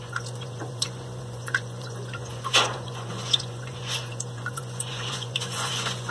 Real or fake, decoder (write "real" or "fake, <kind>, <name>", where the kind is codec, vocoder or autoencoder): fake, vocoder, Vocos